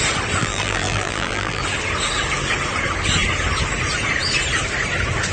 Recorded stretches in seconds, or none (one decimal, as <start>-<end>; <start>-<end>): 0.0-0.4; 1.6-5.3